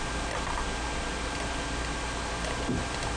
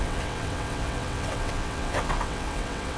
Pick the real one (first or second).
first